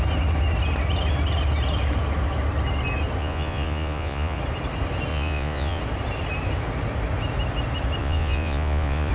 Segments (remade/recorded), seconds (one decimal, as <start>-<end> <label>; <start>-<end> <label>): 0.0-3.2 recorded; 3.2-4.4 remade; 4.4-5.1 recorded; 5.1-5.8 remade; 5.8-8.0 recorded; 8.0-9.1 remade